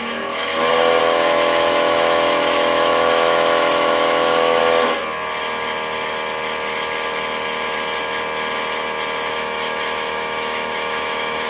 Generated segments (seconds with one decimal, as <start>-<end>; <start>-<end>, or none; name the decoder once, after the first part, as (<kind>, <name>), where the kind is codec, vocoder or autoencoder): 0.0-0.5 (autoencoder, DAC-VAE); 1.0-4.6; 9.3-11.5